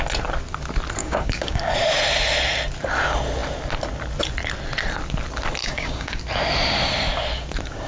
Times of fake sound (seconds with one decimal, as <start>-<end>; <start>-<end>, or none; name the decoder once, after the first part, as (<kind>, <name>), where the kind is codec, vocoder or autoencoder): 1.0-1.7 (codec, DAC); 5.6-6.2